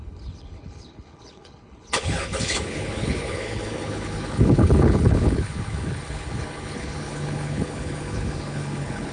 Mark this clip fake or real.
fake